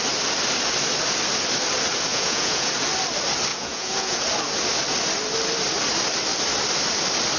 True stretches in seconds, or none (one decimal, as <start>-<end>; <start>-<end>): 0.0-2.1; 2.7-3.5; 4.2-7.4